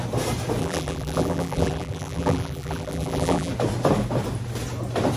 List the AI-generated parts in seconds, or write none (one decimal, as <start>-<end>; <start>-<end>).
0.6-3.5